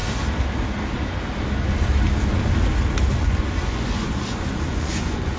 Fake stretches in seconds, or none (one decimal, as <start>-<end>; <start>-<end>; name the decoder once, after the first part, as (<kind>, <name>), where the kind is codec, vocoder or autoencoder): 3.2-5.4 (vocoder, Vocos)